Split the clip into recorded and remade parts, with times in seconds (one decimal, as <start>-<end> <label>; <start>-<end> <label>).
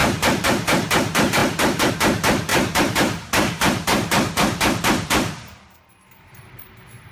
0.0-0.9 remade; 0.9-2.5 recorded; 2.5-5.9 remade; 5.9-7.1 recorded